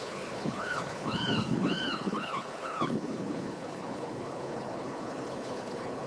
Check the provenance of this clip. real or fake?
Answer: fake